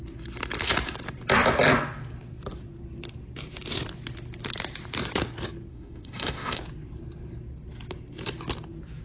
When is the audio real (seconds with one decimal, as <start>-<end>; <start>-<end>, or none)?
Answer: 0.0-5.7; 6.6-9.0